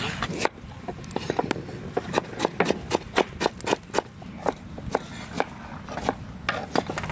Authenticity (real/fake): real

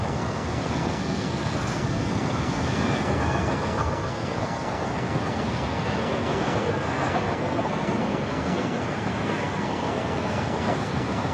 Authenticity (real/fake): fake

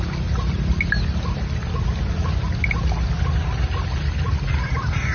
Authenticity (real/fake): real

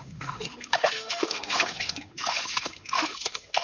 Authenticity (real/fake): fake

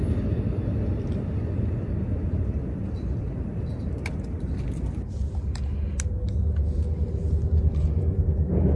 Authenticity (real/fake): real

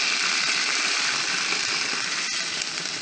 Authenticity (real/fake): real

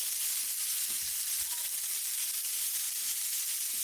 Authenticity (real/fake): real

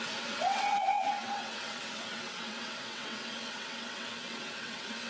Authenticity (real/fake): fake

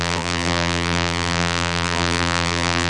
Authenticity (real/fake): fake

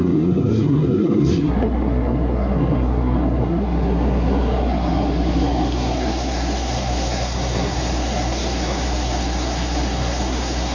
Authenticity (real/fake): fake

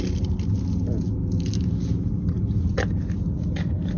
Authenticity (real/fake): real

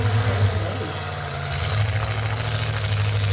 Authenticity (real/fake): real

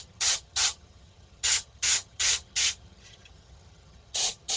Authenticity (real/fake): fake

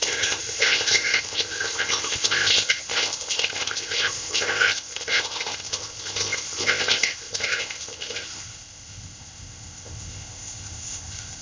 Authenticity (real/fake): fake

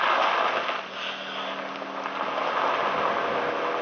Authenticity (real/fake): real